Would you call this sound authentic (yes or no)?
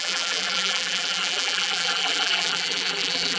no